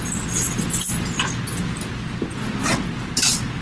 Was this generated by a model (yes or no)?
no